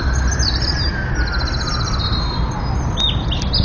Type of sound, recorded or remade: recorded